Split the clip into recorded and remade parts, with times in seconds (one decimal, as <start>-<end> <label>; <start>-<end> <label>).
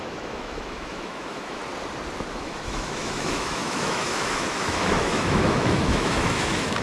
0.0-1.6 remade; 1.6-2.3 recorded; 2.3-6.8 remade